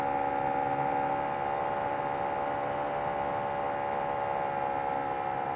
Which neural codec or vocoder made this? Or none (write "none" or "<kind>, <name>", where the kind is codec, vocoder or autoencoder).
none